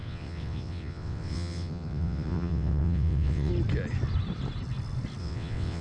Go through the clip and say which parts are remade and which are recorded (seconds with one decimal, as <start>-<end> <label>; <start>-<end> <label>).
0.0-3.5 remade; 3.5-5.2 recorded; 5.2-5.8 remade